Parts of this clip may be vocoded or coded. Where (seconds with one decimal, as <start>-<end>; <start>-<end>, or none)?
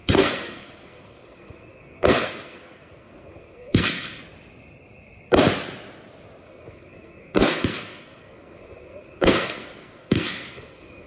0.0-4.2; 6.4-11.1